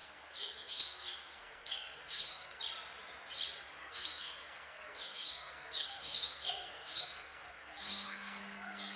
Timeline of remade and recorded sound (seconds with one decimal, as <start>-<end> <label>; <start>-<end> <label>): 0.0-2.6 remade; 2.6-3.8 recorded; 3.8-9.0 remade